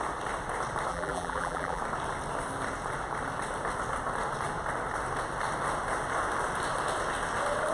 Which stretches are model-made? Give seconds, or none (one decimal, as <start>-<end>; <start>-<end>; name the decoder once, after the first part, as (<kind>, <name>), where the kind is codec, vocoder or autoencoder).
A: 0.9-1.8 (vocoder, BigVGAN v2)